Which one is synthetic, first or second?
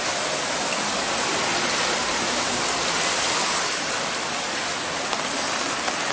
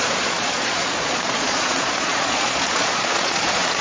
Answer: second